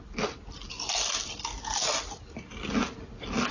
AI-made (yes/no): no